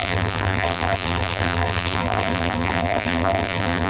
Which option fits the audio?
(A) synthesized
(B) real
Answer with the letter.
A